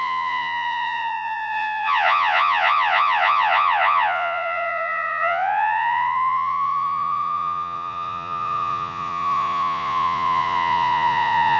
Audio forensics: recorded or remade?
remade